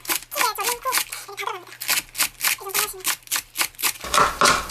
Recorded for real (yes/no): yes